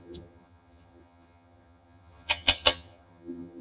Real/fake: fake